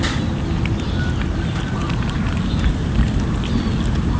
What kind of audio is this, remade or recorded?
recorded